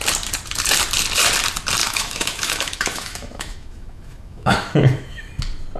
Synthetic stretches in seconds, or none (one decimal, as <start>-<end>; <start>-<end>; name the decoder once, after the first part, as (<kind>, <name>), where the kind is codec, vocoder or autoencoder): 1.8-5.3 (autoencoder, DAC-VAE)